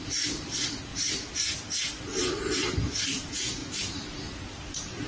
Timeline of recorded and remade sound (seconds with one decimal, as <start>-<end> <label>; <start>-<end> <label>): 0.0-5.1 remade